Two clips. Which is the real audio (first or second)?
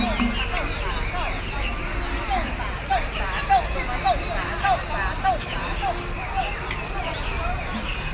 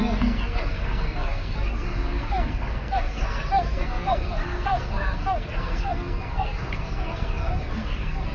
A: first